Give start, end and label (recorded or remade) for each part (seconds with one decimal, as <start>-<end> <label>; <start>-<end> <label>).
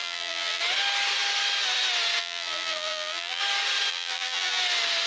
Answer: 0.0-0.6 remade; 0.6-2.2 recorded; 2.2-3.4 remade; 3.4-3.9 recorded; 3.9-4.6 remade; 4.6-5.1 recorded